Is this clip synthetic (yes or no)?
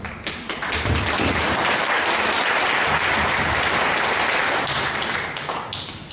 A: no